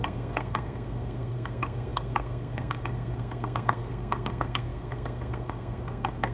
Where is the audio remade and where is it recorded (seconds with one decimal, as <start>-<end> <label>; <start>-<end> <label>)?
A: 0.0-6.3 remade